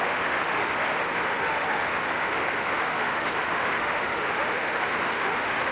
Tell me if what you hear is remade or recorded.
remade